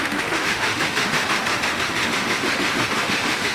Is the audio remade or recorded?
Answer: remade